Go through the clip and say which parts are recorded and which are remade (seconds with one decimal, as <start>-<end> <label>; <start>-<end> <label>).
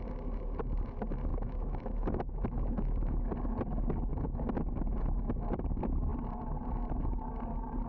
0.0-1.3 recorded; 1.3-3.3 remade; 3.3-4.1 recorded; 4.1-4.7 remade; 4.7-7.9 recorded